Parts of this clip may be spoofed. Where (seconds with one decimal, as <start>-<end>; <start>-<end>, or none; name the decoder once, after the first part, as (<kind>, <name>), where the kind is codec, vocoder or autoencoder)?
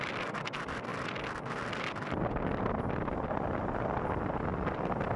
none